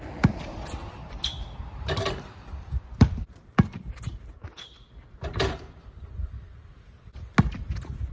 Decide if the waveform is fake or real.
real